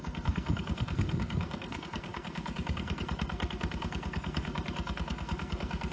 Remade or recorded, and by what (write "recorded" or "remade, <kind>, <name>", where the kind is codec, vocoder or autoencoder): remade, codec, SNAC